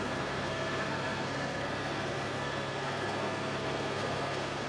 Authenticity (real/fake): fake